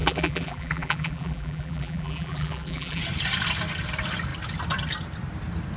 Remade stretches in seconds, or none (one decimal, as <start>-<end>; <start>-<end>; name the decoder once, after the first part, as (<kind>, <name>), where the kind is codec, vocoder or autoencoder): 0.0-3.0 (vocoder, BigVGAN v2)